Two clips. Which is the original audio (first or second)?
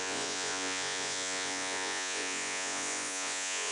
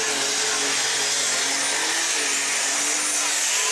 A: second